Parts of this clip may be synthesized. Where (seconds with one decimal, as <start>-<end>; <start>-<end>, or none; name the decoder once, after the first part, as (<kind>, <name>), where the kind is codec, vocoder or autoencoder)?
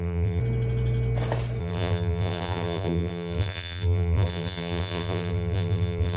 0.0-0.4 (vocoder, BigVGAN v2); 1.6-6.2